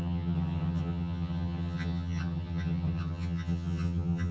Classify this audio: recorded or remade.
remade